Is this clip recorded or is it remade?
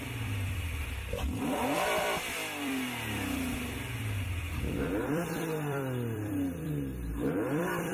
remade